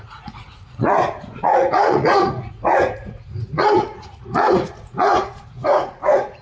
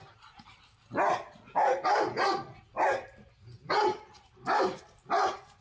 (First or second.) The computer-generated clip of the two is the first